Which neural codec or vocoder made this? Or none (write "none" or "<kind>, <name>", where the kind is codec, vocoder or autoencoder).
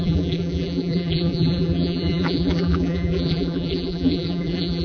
vocoder, BigVGAN v2